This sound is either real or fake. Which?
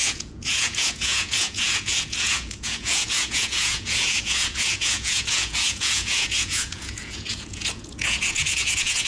fake